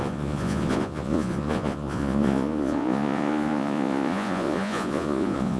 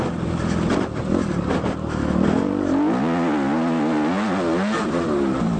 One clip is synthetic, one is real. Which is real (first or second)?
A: second